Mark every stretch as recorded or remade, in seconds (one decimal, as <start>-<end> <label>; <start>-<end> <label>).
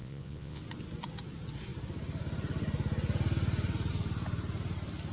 0.0-0.6 remade; 0.6-5.1 recorded